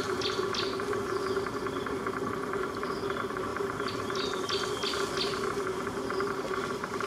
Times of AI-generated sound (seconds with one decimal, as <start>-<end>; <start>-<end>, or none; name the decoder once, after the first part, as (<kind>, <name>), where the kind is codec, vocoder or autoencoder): 3.5-4.1 (vocoder, BigVGAN v2)